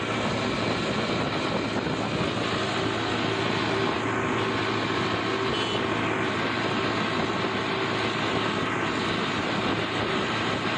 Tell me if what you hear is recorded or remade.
recorded